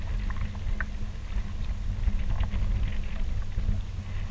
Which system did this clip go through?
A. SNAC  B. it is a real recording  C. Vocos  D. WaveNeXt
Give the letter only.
B